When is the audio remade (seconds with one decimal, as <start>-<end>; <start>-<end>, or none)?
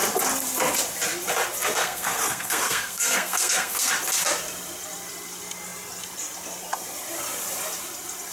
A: 1.8-3.9